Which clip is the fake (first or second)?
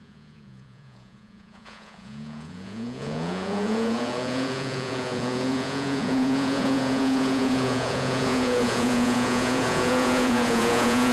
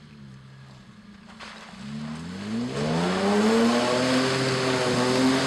first